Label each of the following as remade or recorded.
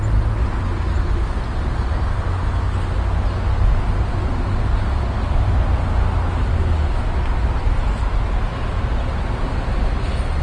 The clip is recorded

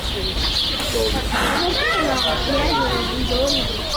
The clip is recorded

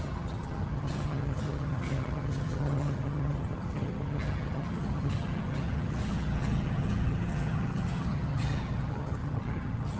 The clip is remade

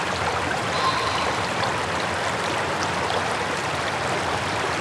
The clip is recorded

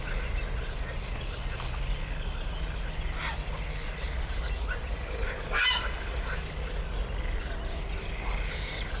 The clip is recorded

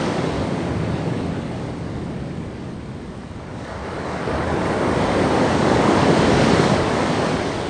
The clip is remade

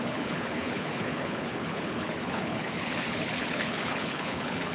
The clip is remade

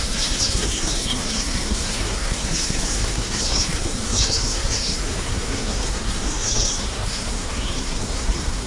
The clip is remade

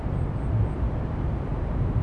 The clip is recorded